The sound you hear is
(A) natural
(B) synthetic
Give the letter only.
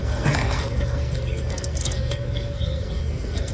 B